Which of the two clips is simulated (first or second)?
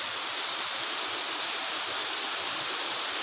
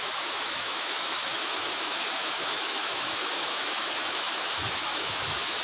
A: second